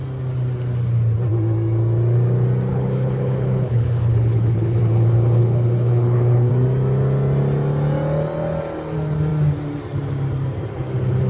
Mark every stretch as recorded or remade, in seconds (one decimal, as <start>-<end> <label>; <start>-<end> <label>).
0.0-2.7 recorded; 2.7-6.5 remade; 6.5-11.3 recorded